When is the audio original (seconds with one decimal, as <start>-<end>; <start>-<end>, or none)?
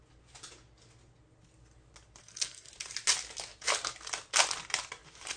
0.0-2.2; 2.7-5.4